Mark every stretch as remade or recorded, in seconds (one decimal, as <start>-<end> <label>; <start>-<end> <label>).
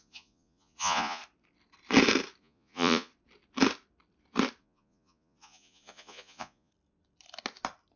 0.0-1.2 remade; 1.2-2.4 recorded; 2.4-3.1 remade; 3.1-4.6 recorded; 4.6-6.7 remade; 6.7-8.0 recorded